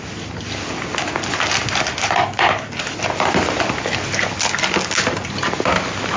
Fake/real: real